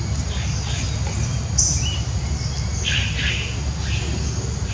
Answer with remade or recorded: recorded